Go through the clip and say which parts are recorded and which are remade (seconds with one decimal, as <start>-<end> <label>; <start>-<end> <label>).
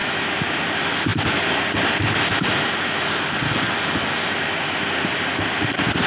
0.0-0.6 remade; 0.6-6.1 recorded